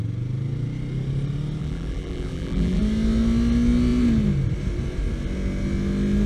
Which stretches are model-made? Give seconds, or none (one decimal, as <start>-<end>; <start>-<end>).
1.6-2.8